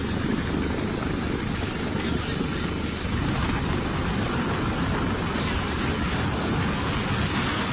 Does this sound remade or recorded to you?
recorded